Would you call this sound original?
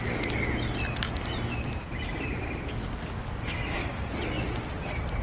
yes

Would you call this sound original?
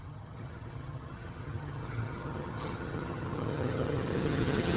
no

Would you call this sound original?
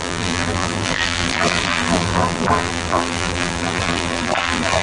no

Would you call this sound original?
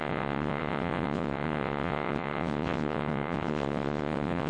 no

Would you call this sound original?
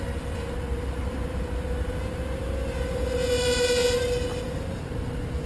yes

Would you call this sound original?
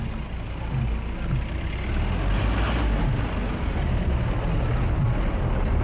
yes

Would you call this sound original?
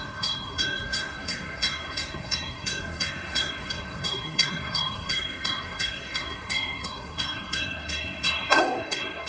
no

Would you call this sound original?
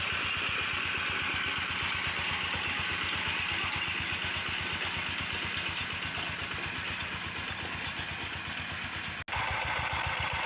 yes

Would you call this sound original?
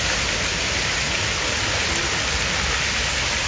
yes